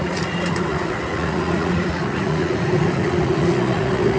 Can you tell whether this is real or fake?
fake